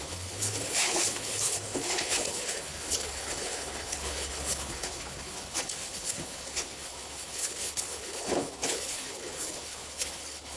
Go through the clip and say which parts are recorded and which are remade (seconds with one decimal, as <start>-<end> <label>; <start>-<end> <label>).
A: 0.0-10.6 remade